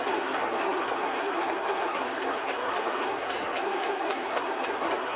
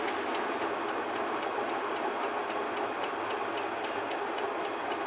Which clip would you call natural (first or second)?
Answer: second